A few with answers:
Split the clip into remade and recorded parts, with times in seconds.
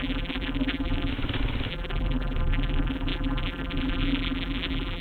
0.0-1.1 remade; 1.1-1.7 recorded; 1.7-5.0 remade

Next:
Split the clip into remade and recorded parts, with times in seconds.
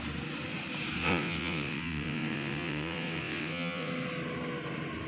0.0-1.0 recorded; 1.0-3.9 remade; 3.9-5.1 recorded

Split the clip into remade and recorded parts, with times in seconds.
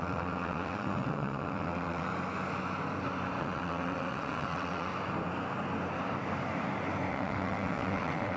0.0-2.1 remade; 2.1-3.4 recorded; 3.4-4.9 remade; 4.9-7.1 recorded; 7.1-8.4 remade